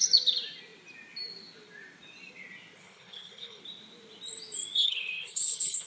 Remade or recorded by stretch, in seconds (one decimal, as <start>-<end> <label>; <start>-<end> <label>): 0.0-2.8 recorded; 2.8-3.6 remade; 3.6-4.8 recorded; 4.8-5.9 remade